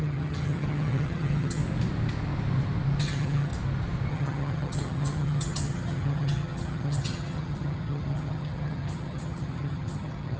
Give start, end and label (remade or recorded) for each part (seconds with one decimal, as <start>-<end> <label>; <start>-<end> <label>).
0.0-1.6 remade; 1.6-3.0 recorded; 3.0-3.5 remade; 3.5-4.1 recorded; 4.1-10.4 remade